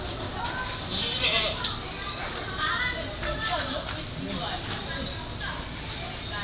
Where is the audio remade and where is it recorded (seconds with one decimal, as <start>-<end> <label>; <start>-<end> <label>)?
0.0-6.4 recorded